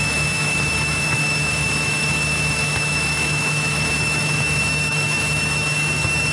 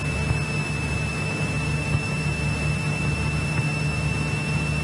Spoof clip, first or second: first